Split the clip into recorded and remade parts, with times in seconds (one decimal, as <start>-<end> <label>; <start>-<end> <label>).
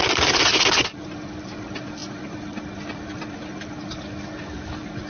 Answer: 0.0-5.1 recorded